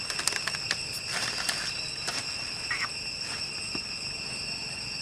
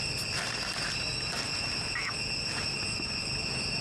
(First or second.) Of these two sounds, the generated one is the first